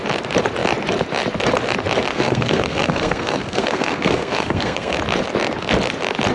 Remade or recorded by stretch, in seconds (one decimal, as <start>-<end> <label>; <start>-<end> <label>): 0.0-2.1 recorded; 2.1-5.0 remade; 5.0-6.3 recorded

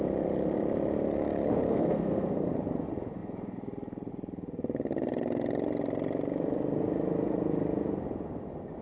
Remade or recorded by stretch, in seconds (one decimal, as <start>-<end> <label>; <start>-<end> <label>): 0.0-1.7 recorded; 1.7-2.5 remade; 2.5-8.8 recorded